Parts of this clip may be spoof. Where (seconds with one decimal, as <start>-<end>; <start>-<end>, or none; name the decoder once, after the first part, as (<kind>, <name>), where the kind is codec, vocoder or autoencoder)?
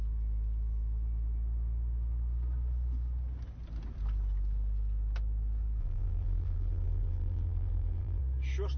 5.8-8.2 (vocoder, BigVGAN v2)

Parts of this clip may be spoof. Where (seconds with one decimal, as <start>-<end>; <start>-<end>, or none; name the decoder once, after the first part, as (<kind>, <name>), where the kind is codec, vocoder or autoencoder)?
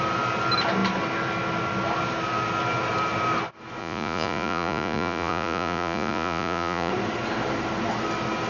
3.8-6.9 (vocoder, Vocos)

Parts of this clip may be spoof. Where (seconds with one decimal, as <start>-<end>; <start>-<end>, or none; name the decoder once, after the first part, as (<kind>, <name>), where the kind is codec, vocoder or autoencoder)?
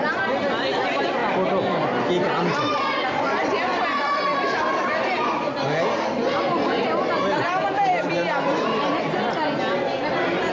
none